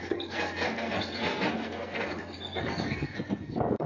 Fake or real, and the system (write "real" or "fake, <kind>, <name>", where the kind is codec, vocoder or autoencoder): fake, codec, SNAC